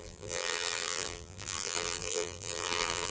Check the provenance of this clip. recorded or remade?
remade